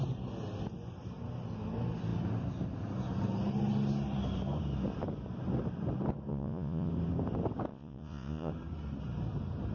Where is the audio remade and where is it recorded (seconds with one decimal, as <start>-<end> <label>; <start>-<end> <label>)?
0.0-6.3 recorded; 6.3-6.9 remade; 6.9-7.7 recorded; 7.7-8.5 remade; 8.5-9.7 recorded